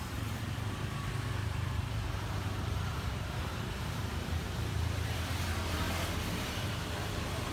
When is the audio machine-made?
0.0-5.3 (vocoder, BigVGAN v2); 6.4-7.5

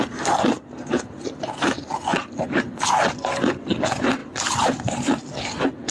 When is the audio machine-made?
4.2-5.4 (vocoder, BigVGAN v2)

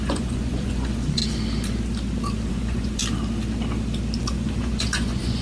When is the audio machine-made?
0.0-1.2 (vocoder, Vocos); 2.5-3.0; 4.2-5.4

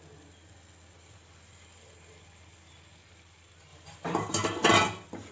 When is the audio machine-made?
3.7-4.7 (vocoder, BigVGAN v2)

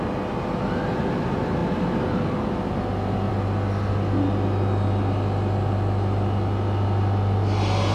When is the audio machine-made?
none

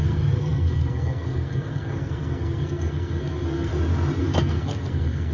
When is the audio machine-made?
0.0-3.7 (codec, SNAC); 4.2-5.3